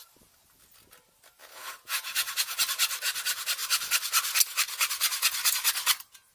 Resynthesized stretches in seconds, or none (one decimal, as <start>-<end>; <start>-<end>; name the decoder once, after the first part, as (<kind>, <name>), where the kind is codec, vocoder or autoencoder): 1.4-2.6 (vocoder, Vocos)

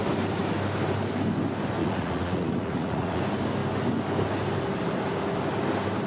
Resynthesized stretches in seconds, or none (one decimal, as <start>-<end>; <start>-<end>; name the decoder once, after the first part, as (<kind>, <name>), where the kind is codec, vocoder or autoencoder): 1.8-3.2 (vocoder, Vocos)

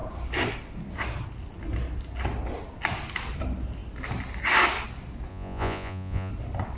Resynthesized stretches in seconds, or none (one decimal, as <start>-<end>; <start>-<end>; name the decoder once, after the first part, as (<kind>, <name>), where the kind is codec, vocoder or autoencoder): 5.3-6.3 (vocoder, Vocos)